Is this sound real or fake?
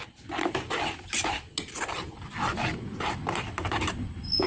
real